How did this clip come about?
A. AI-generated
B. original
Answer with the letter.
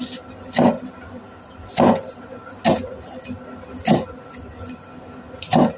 B